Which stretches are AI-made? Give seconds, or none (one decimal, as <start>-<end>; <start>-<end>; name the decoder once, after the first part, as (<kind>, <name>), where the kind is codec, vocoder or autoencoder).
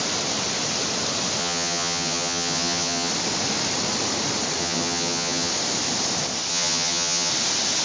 1.4-3.1 (vocoder, HiFi-GAN); 4.6-5.5; 6.5-7.3